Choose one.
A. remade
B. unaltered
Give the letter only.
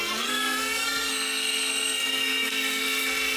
A